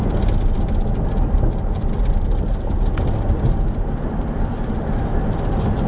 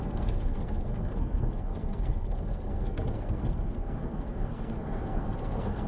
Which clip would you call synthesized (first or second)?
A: second